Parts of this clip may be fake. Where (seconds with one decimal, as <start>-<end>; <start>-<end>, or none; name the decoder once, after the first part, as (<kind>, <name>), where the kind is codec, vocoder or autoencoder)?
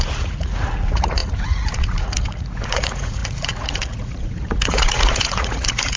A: 0.0-6.0 (vocoder, Vocos)